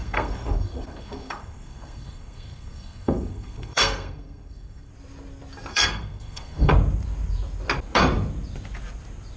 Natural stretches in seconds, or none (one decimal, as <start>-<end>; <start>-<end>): 4.9-5.7; 6.7-9.4